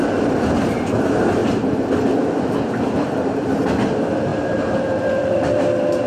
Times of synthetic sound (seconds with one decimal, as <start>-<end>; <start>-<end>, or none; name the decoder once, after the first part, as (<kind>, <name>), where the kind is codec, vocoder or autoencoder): 4.3-5.4 (vocoder, BigVGAN v2)